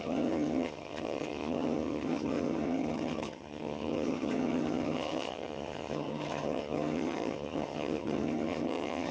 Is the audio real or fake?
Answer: fake